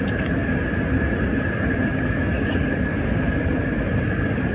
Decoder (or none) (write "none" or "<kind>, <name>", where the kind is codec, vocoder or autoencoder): none